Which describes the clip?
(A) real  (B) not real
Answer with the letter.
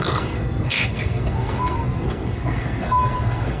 B